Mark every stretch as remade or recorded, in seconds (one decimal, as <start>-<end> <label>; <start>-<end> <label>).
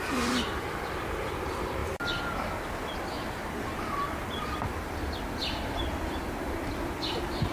0.0-1.8 remade; 1.8-5.2 recorded; 5.2-7.5 remade